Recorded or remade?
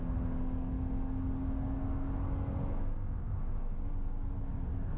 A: recorded